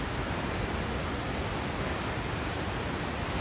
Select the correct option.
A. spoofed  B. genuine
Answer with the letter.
B